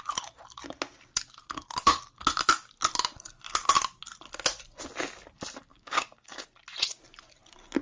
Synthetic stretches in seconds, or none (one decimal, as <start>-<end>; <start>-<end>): 5.7-6.4